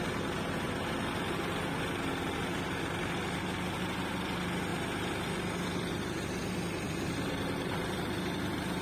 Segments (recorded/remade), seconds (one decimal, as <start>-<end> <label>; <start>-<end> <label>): 0.0-4.7 recorded; 4.7-8.0 remade; 8.0-8.8 recorded